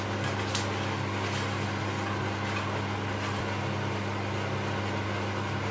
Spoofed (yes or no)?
no